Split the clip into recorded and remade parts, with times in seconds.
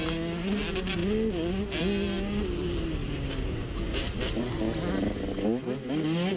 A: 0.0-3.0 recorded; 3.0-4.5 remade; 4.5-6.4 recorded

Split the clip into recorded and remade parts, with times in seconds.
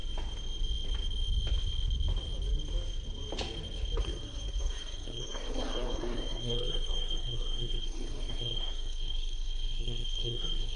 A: 0.0-4.0 recorded; 4.0-10.8 remade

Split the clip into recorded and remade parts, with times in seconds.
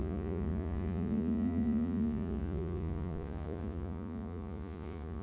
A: 0.0-5.2 remade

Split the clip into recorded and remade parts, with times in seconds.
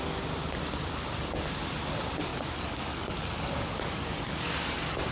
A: 0.0-2.3 recorded; 2.3-4.5 remade; 4.5-5.1 recorded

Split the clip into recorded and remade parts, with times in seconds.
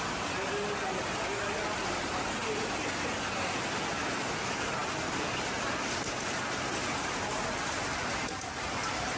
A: 0.0-9.2 recorded